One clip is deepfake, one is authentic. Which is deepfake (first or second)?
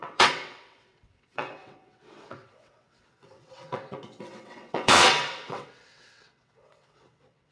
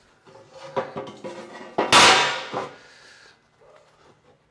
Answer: first